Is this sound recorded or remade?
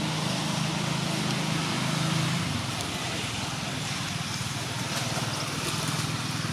recorded